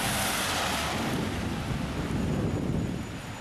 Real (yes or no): yes